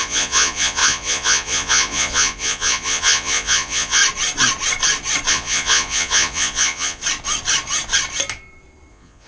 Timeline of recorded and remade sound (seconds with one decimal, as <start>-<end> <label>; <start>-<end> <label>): 0.0-4.0 remade; 4.0-5.3 recorded; 5.3-7.0 remade; 7.0-8.9 recorded; 8.9-9.3 remade